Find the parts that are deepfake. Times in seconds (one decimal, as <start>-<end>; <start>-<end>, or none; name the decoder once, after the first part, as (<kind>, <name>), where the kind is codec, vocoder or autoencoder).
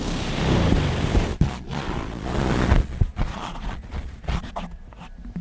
1.3-4.5 (vocoder, Vocos)